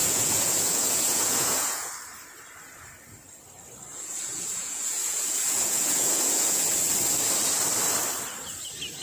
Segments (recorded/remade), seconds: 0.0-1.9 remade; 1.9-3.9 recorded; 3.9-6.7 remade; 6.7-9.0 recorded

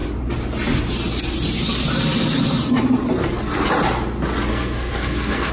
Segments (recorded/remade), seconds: 0.0-4.5 recorded; 4.5-5.5 remade

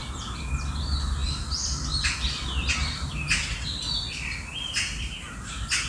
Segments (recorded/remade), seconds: 0.0-5.9 recorded

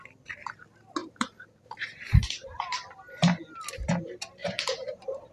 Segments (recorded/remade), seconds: 0.0-1.0 recorded; 1.0-2.6 remade; 2.6-4.4 recorded; 4.4-5.3 remade

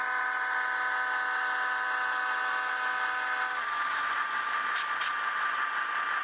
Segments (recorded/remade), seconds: 0.0-6.2 recorded

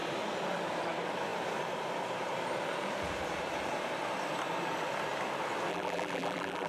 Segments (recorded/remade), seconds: 0.0-5.7 recorded; 5.7-6.7 remade

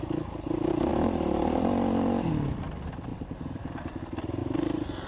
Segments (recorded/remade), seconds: 0.0-3.1 recorded; 3.1-4.0 remade; 4.0-4.4 recorded; 4.4-5.1 remade